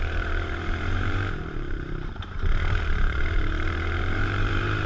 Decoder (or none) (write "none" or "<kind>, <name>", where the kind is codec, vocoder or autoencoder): vocoder, BigVGAN v2